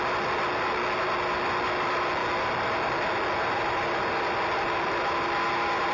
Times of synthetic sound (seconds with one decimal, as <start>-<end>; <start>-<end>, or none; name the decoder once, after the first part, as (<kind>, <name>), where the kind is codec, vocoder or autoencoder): none